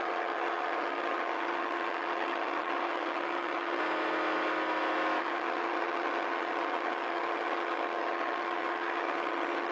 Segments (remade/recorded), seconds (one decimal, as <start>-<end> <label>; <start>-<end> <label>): 0.0-3.8 remade; 3.8-5.2 recorded; 5.2-9.7 remade